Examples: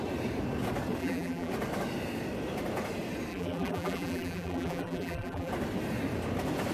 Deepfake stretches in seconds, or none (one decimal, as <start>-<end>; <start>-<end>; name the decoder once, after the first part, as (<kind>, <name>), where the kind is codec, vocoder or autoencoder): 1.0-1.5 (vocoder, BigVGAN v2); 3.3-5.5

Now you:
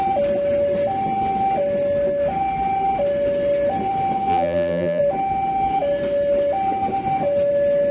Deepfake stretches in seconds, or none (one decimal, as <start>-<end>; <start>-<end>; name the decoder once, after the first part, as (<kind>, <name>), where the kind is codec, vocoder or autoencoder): 4.3-5.0 (vocoder, BigVGAN v2)

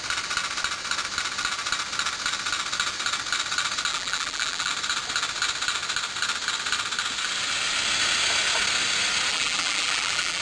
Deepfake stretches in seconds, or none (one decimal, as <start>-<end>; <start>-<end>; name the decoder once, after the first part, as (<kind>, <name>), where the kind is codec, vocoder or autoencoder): 3.9-4.7 (vocoder, BigVGAN v2); 9.3-10.4

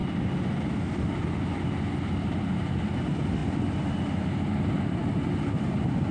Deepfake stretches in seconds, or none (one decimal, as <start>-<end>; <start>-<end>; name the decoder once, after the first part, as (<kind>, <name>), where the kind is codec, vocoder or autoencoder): none

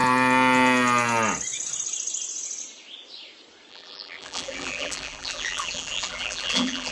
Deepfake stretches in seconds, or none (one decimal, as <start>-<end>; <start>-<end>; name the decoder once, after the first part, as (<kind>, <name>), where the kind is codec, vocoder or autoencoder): 3.7-6.9 (vocoder, BigVGAN v2)

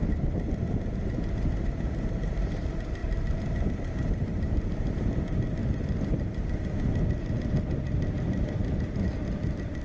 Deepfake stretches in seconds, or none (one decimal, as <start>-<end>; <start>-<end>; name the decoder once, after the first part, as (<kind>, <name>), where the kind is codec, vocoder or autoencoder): 0.0-5.6 (vocoder, BigVGAN v2); 7.6-9.8

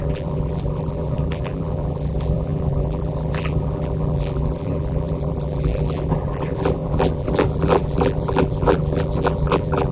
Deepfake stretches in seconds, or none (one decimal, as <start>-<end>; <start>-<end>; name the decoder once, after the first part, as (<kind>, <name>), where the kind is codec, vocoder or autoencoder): 0.0-9.9 (vocoder, BigVGAN v2)